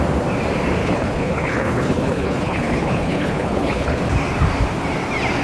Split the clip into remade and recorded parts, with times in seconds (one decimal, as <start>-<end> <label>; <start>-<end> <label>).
0.0-0.8 recorded; 0.8-4.0 remade; 4.0-5.4 recorded